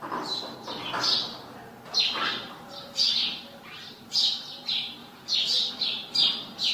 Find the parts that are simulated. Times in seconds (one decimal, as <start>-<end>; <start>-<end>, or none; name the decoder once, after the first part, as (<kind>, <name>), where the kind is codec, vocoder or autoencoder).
2.3-3.1 (vocoder, BigVGAN v2); 5.0-5.7